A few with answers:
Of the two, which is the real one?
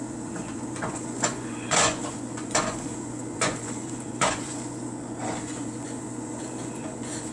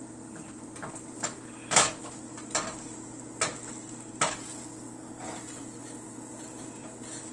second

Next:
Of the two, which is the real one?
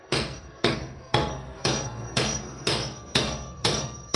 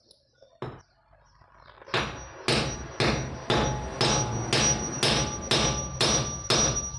second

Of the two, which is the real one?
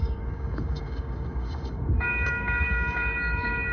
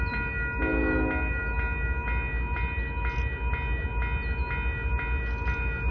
second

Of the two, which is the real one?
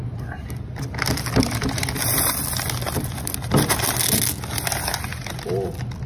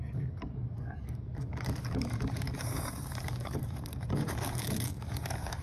first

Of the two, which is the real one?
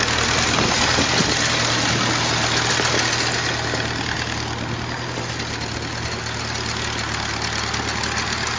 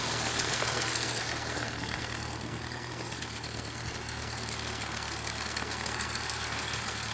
first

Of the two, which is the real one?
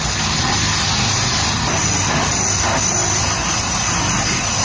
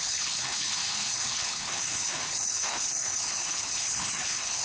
first